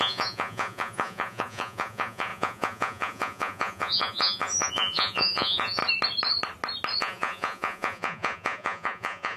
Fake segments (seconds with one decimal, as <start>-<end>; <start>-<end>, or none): 0.0-5.8; 7.0-9.4